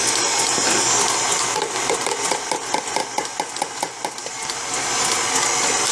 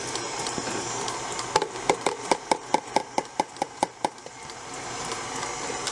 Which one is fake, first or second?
second